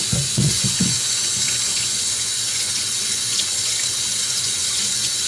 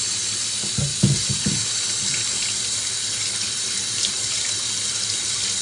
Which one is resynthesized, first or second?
first